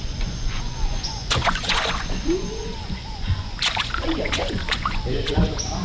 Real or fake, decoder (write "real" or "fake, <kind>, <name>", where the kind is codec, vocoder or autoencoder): fake, vocoder, Vocos